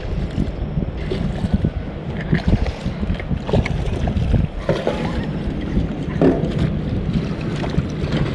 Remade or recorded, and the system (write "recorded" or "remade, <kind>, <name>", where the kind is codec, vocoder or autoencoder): recorded